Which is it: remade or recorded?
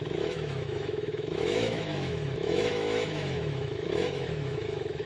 remade